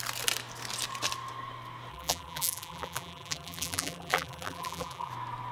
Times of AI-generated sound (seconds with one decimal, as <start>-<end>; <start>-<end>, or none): 1.9-5.1